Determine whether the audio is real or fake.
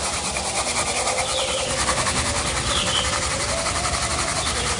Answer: real